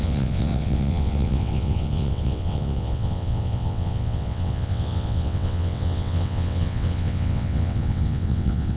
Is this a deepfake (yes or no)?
yes